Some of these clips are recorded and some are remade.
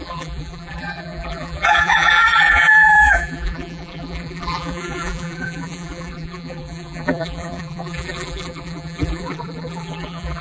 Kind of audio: remade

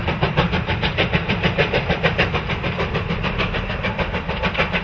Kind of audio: remade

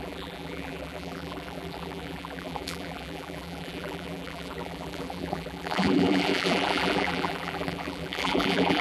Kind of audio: remade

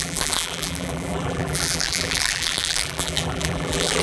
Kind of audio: remade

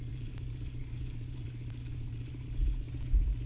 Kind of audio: remade